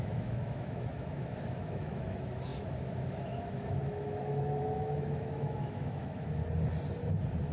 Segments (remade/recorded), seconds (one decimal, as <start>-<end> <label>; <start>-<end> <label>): 0.0-6.4 remade; 6.4-7.5 recorded

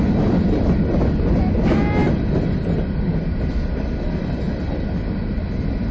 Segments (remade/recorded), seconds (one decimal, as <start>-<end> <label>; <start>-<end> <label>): 0.0-5.9 recorded